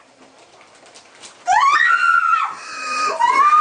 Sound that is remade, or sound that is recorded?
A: remade